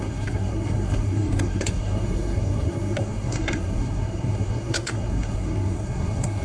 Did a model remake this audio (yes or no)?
yes